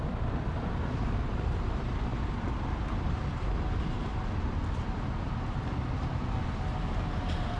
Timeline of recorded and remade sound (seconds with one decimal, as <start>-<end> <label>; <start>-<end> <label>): 0.0-7.6 recorded